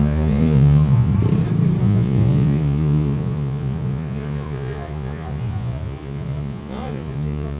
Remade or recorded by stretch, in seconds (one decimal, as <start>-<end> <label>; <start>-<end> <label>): 0.0-1.1 remade; 1.1-1.8 recorded; 1.8-7.6 remade